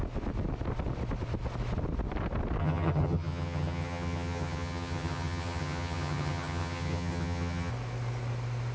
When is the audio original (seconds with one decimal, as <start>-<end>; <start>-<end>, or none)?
0.0-2.6; 7.7-8.7